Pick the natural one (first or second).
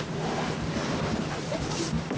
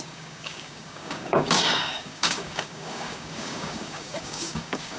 first